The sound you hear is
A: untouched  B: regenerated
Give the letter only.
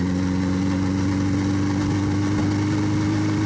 A